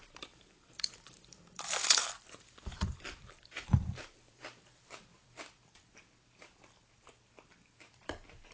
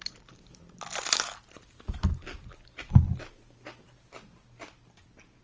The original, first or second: second